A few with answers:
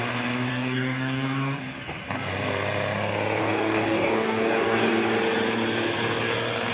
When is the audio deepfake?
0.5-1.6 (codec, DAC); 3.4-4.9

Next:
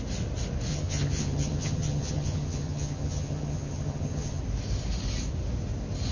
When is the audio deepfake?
0.7-4.4 (vocoder, HiFi-GAN)

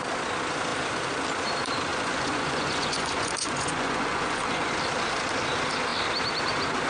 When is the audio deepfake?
1.9-4.7 (vocoder, Vocos)